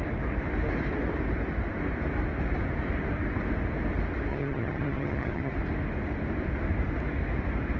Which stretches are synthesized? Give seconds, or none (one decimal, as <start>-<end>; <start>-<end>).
4.3-5.5